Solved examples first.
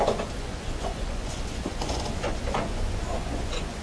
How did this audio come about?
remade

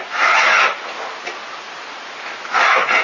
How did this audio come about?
recorded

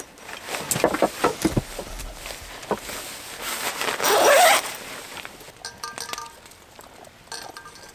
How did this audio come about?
recorded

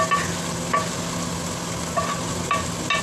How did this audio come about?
recorded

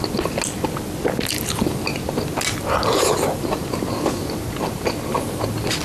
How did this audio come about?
recorded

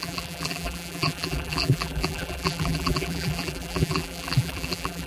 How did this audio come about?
remade